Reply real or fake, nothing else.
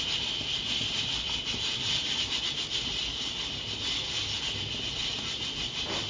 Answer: real